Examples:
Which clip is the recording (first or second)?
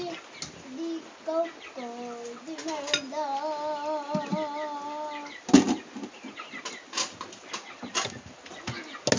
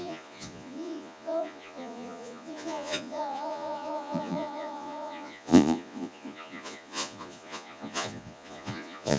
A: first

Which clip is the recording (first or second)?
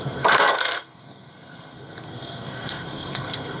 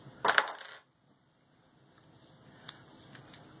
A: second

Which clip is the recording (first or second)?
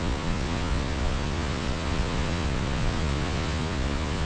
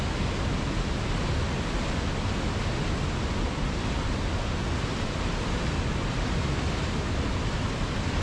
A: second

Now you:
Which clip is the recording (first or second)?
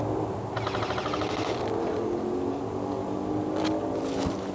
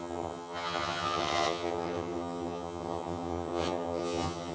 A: first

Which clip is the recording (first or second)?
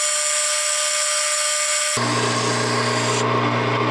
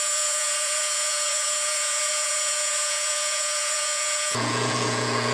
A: first